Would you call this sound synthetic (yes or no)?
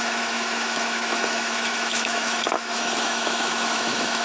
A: yes